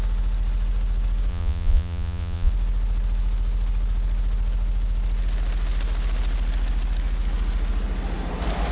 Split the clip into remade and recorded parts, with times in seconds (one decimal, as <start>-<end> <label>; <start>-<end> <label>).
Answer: 0.0-1.3 recorded; 1.3-2.5 remade; 2.5-8.7 recorded